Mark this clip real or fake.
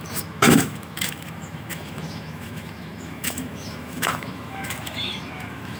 fake